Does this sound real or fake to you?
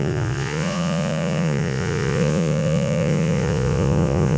fake